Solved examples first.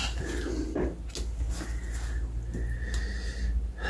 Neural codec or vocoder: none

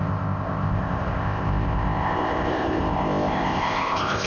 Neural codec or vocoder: codec, ZipCodec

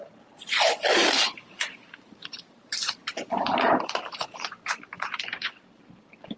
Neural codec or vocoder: vocoder, BigVGAN v2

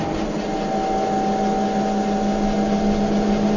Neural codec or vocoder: none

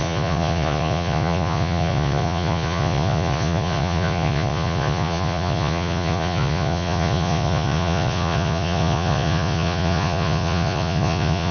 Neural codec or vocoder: vocoder, Vocos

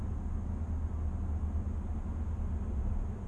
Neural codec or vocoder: none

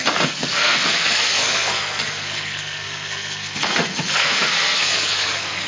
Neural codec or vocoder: codec, SNAC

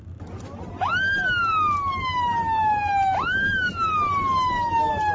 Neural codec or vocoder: none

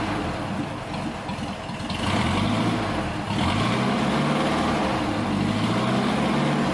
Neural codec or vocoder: none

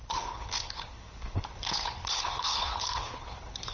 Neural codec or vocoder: codec, HILCodec